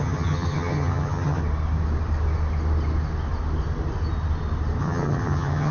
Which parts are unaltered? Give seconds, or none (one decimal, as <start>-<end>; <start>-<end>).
1.4-4.8